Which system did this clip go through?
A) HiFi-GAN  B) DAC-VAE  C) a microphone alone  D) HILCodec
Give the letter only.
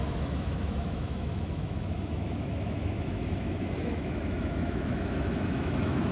B